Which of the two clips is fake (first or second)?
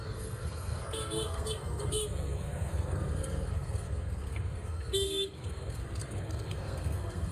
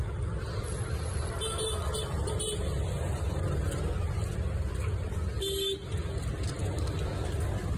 first